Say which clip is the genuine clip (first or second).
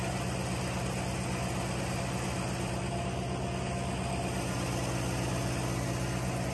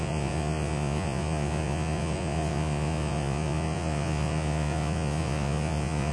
first